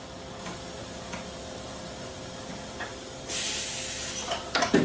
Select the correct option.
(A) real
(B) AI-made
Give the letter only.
A